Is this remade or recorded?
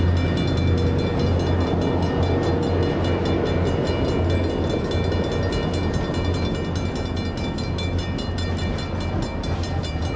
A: recorded